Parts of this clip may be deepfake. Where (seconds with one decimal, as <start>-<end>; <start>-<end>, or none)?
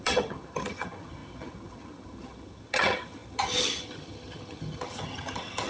0.0-5.7